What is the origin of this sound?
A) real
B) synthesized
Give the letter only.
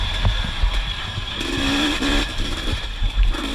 B